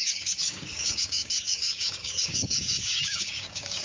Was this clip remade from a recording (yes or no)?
yes